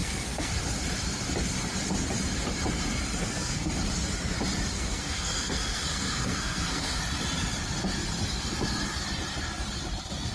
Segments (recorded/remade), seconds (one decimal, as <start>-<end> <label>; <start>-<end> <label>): 0.0-0.5 remade; 0.5-3.2 recorded; 3.2-3.7 remade; 3.7-4.7 recorded; 4.7-7.0 remade; 7.0-10.3 recorded